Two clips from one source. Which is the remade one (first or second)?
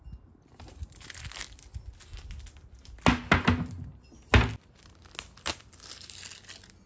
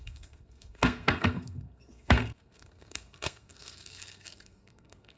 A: second